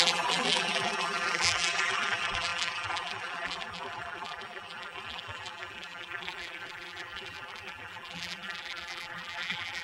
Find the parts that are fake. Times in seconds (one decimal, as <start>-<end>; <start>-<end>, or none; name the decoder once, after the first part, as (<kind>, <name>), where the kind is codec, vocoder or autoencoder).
0.0-9.8 (vocoder, BigVGAN v2)